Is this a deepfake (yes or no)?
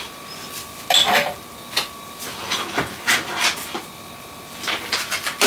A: no